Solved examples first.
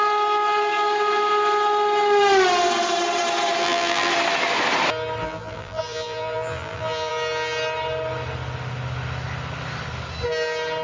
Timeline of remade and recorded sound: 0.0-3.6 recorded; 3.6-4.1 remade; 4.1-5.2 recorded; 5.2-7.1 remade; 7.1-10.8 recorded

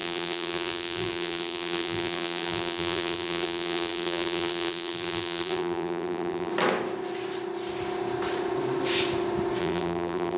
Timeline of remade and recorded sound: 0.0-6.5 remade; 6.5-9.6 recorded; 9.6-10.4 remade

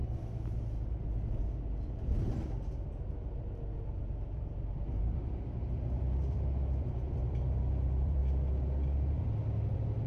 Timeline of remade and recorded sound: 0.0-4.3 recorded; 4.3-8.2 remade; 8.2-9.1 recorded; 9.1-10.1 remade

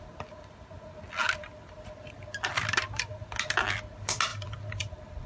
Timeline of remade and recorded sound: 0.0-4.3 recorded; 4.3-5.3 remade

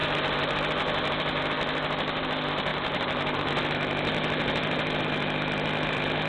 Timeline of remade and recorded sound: 0.0-2.7 recorded; 2.7-3.5 remade; 3.5-6.3 recorded

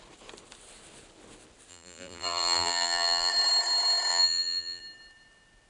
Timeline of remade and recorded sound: 0.0-1.7 recorded; 1.7-3.3 remade; 3.3-4.1 recorded; 4.1-4.8 remade; 4.8-5.7 recorded

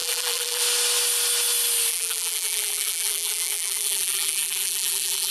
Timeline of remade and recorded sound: 0.0-0.6 remade; 0.6-1.9 recorded; 1.9-5.3 remade

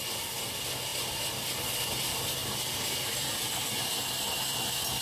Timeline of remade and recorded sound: 0.0-2.4 recorded; 2.4-3.9 remade; 3.9-5.0 recorded